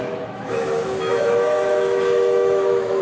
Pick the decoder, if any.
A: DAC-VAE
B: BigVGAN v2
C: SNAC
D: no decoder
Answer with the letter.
A